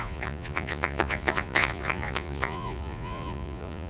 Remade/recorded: remade